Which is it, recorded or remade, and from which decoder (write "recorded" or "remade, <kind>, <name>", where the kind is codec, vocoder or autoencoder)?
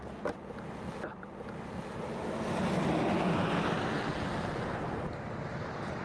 recorded